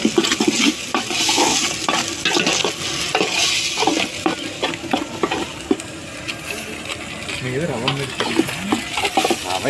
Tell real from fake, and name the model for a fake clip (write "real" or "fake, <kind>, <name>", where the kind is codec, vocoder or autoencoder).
real